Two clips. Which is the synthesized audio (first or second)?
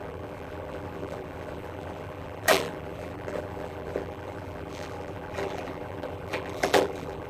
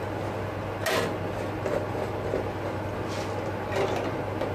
first